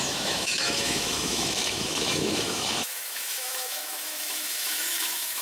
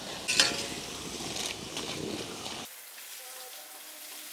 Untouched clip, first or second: second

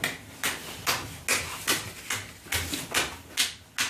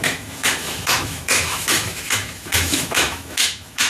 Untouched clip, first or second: first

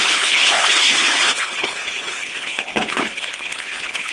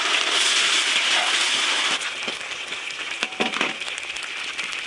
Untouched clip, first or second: second